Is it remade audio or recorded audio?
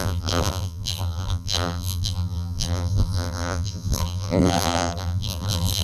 remade